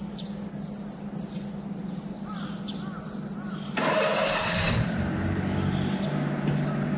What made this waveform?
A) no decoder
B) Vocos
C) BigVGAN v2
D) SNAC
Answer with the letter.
A